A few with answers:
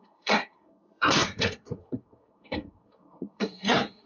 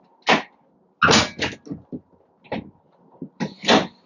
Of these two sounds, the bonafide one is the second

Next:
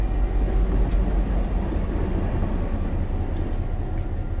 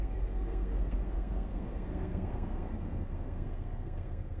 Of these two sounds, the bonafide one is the first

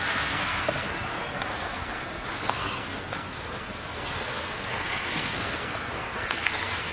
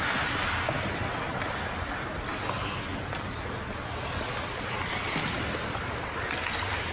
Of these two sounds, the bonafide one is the second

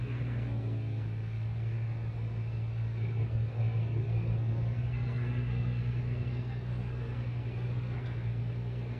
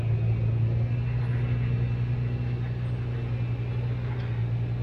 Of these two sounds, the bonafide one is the second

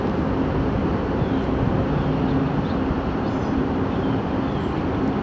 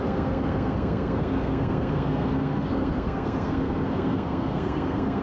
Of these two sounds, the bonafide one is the first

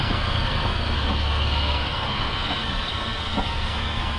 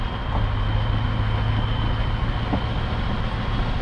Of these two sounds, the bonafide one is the second